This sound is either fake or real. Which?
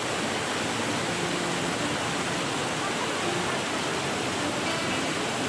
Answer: real